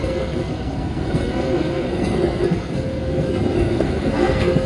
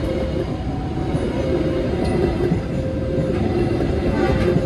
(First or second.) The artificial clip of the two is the first